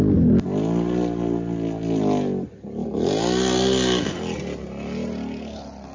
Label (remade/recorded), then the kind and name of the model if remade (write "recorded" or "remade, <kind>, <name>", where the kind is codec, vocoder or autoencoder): recorded